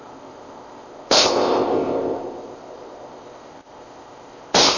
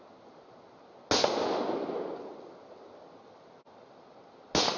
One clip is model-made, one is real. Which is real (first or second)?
second